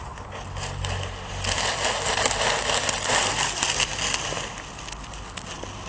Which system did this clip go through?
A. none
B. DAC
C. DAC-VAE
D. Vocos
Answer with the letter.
A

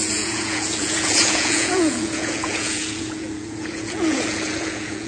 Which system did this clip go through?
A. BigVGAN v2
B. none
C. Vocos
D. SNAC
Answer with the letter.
C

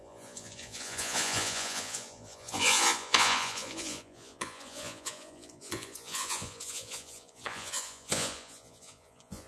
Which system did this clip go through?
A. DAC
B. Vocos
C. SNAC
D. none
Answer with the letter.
B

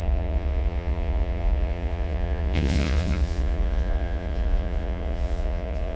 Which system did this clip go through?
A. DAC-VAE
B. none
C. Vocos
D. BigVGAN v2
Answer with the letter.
C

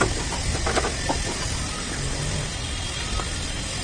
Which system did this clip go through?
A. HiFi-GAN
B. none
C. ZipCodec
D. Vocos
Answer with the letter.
B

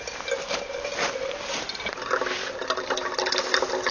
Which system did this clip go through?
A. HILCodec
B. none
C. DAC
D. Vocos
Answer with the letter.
B